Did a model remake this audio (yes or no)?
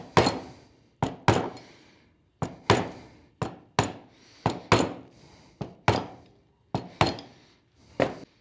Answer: no